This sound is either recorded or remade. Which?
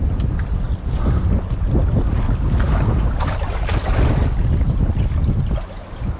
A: recorded